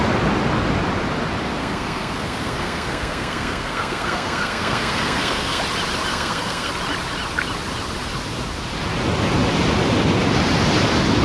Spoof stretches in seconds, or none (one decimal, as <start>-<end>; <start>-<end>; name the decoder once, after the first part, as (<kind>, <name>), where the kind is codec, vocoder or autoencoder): 1.6-5.6 (codec, SNAC); 6.1-6.7